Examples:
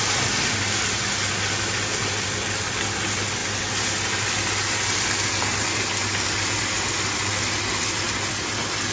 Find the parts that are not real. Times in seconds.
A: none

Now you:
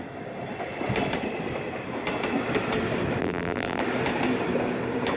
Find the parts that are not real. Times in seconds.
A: 3.2-3.8 (vocoder, BigVGAN v2)

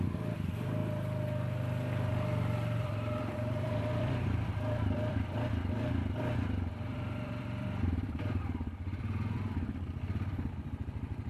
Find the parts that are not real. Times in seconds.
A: 0.0-0.8 (vocoder, BigVGAN v2); 2.1-11.3

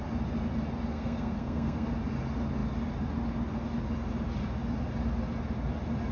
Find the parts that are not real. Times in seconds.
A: 0.9-1.9 (codec, SNAC)